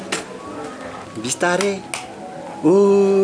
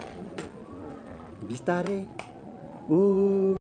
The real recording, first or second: first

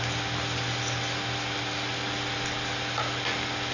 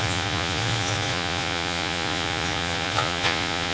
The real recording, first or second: first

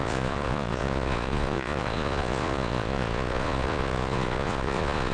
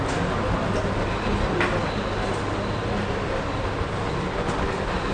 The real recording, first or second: second